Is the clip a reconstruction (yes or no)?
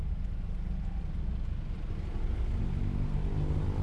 no